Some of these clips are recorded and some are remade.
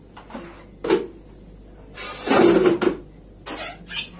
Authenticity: recorded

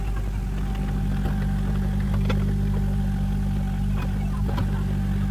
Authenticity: recorded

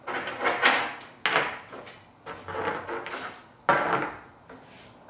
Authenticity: recorded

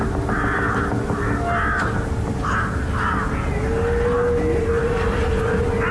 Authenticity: recorded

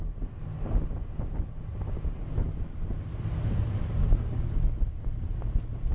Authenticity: recorded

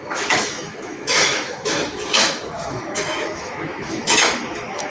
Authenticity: remade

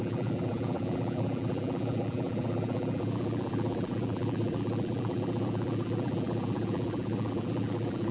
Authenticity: remade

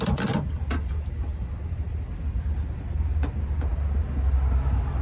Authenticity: recorded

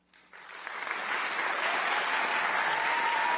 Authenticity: recorded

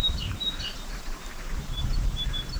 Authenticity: remade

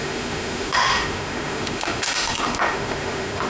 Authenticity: remade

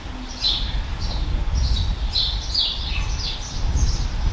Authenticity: recorded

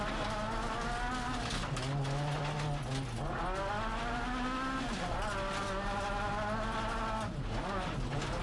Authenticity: recorded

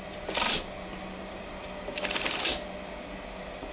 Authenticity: recorded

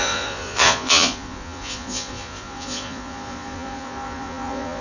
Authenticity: remade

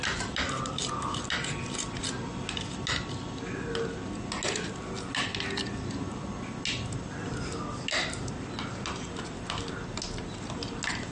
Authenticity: recorded